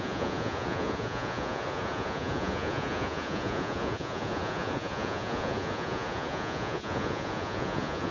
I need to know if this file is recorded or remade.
remade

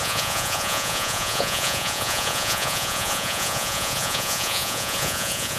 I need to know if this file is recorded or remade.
remade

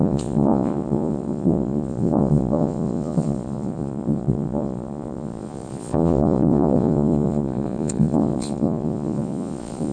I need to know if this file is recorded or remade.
remade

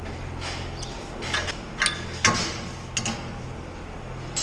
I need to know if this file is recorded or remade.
recorded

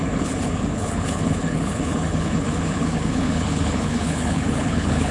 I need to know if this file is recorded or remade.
remade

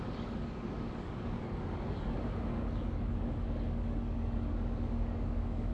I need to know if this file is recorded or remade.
remade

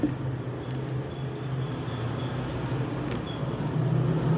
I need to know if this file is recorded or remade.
recorded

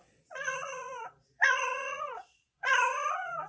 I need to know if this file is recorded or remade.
remade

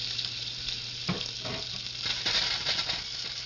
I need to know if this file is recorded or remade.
recorded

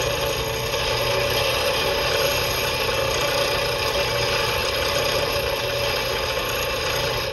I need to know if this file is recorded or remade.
recorded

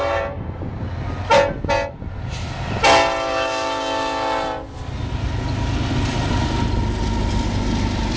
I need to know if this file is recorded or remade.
recorded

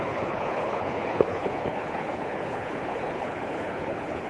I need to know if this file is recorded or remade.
remade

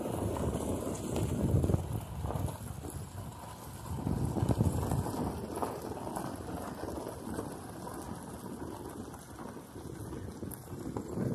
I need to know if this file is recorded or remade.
recorded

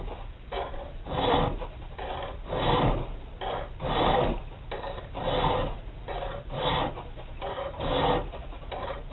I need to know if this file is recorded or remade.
recorded